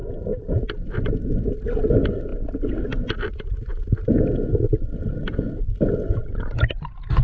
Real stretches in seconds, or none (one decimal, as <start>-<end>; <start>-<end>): 0.0-7.2